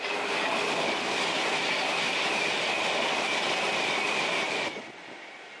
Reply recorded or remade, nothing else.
recorded